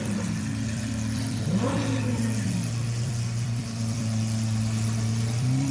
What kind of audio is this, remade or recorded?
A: remade